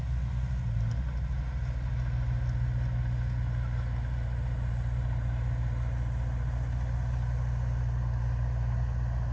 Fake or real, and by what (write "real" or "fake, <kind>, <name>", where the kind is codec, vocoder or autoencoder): real